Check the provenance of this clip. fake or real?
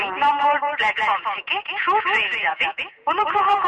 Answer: fake